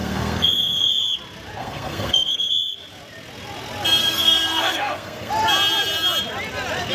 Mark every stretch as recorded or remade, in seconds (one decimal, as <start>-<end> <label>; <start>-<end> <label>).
0.0-0.9 remade; 0.9-1.6 recorded; 1.6-2.5 remade; 2.5-4.0 recorded; 4.0-5.3 remade; 5.3-6.9 recorded